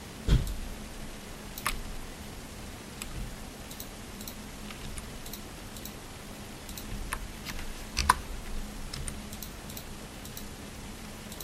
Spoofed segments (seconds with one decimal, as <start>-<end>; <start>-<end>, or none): 0.0-11.4